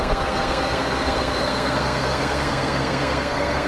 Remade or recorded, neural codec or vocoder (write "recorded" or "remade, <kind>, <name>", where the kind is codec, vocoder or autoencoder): remade, codec, SNAC